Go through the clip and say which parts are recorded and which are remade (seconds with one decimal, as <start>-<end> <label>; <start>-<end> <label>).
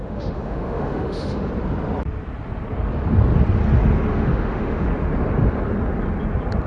0.0-1.5 remade; 1.5-4.1 recorded; 4.1-4.9 remade; 4.9-6.7 recorded